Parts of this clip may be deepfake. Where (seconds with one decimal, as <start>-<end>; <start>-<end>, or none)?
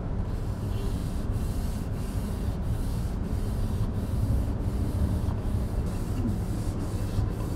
1.0-1.7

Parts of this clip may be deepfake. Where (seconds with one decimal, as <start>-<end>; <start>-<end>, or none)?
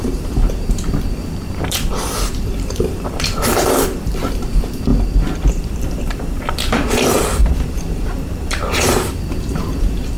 0.0-4.9; 5.5-10.2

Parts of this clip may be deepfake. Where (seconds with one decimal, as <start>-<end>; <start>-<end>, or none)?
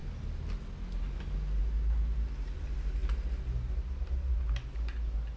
none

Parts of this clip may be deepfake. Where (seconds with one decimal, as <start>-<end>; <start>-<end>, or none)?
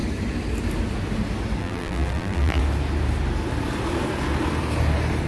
1.6-2.6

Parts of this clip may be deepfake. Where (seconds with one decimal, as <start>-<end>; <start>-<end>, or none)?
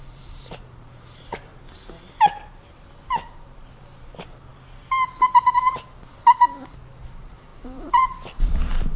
0.0-1.5; 3.1-4.5; 7.0-9.0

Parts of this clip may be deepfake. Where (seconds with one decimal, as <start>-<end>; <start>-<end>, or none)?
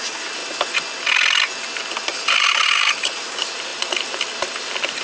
0.0-0.4; 2.3-5.0